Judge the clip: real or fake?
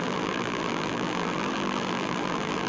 fake